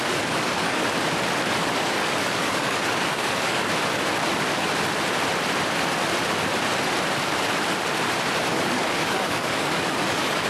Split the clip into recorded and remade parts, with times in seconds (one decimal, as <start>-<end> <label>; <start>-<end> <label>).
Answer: 0.0-0.8 remade; 0.8-1.6 recorded; 1.6-3.7 remade; 3.7-8.5 recorded; 8.5-10.5 remade